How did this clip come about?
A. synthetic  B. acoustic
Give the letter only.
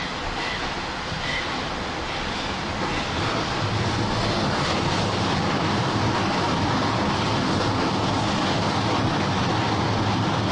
B